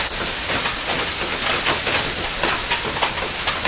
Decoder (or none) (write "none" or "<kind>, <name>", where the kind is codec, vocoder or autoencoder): none